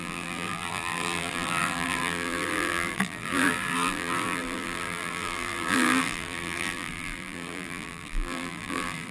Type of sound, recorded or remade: remade